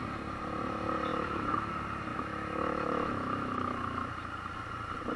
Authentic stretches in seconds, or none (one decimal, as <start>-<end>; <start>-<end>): 0.0-1.1; 1.7-2.1; 4.1-5.2